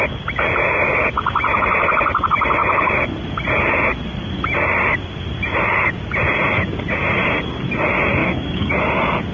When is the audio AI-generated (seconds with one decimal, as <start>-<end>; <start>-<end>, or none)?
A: 8.2-8.7